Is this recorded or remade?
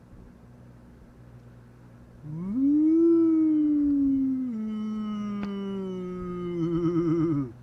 recorded